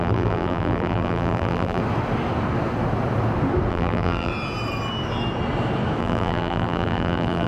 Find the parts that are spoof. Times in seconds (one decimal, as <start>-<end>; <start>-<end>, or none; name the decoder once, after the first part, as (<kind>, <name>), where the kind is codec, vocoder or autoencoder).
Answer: 0.0-1.8 (vocoder, BigVGAN v2); 3.7-4.3; 6.0-7.5